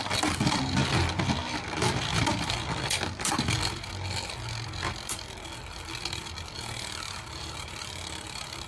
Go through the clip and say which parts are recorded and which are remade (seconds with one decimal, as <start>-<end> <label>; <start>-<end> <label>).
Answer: 0.0-8.7 recorded